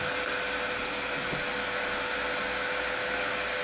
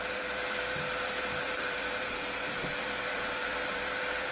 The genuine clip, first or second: first